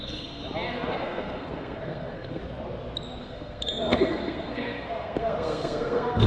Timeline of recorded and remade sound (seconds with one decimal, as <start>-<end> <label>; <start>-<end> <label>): 0.0-0.4 remade; 0.4-0.9 recorded; 0.9-2.4 remade; 2.4-3.2 recorded; 3.2-6.3 remade